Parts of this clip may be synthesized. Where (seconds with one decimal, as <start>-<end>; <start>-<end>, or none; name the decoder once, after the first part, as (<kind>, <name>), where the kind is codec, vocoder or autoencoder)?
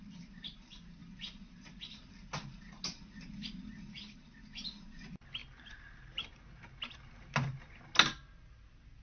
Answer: none